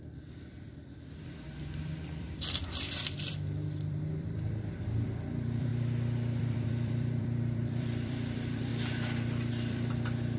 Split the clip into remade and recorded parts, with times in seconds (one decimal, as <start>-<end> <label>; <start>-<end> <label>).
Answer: 0.0-5.7 remade; 5.7-6.4 recorded; 6.4-10.4 remade